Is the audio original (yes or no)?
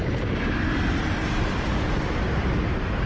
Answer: no